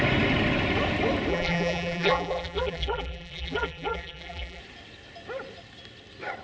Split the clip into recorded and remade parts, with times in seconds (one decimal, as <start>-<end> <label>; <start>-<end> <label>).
0.0-1.3 recorded; 1.3-4.6 remade; 4.6-6.4 recorded